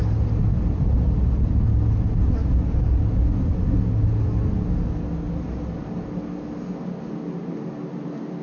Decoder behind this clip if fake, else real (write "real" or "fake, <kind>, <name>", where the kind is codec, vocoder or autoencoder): real